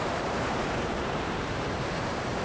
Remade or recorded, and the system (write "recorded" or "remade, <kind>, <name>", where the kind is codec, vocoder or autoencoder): remade, vocoder, BigVGAN v2